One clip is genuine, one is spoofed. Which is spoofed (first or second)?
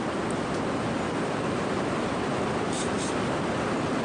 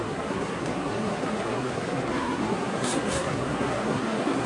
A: second